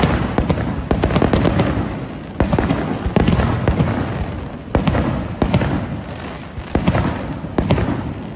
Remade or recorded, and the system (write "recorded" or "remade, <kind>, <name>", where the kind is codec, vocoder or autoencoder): recorded